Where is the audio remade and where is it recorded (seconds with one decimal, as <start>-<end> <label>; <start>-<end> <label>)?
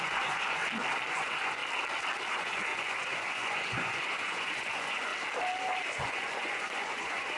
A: 0.0-0.6 remade; 0.6-1.1 recorded; 1.1-1.6 remade; 1.6-2.3 recorded; 2.3-5.1 remade; 5.1-5.8 recorded; 5.8-7.4 remade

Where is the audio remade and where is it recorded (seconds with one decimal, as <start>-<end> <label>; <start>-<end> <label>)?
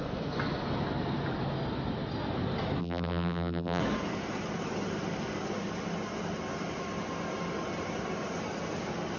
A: 0.0-2.8 recorded; 2.8-3.8 remade; 3.8-9.2 recorded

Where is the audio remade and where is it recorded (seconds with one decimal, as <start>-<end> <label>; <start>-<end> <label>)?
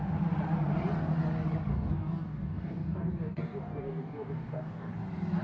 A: 0.0-1.7 recorded; 1.7-4.9 remade; 4.9-5.4 recorded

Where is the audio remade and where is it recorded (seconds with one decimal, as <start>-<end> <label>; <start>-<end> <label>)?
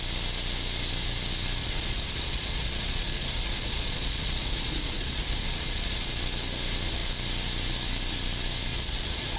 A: 0.0-1.6 recorded; 1.6-6.1 remade; 6.1-8.7 recorded; 8.7-9.4 remade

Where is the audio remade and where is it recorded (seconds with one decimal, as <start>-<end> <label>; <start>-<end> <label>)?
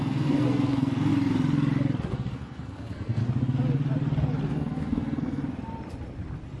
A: 0.0-1.1 remade; 1.1-2.1 recorded; 2.1-3.2 remade; 3.2-4.5 recorded; 4.5-5.4 remade; 5.4-6.6 recorded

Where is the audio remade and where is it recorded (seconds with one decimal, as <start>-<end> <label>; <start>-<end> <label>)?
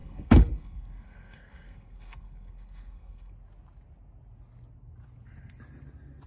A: 0.0-3.3 remade; 3.3-6.3 recorded